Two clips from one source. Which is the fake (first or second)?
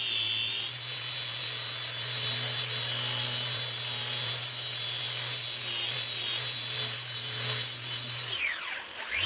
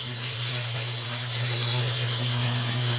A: second